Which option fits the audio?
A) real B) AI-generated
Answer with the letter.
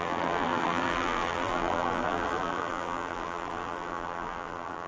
B